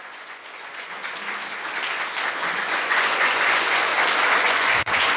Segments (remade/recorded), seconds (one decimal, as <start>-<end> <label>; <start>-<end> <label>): 0.0-1.0 remade; 1.0-2.3 recorded; 2.3-3.9 remade; 3.9-4.4 recorded; 4.4-5.2 remade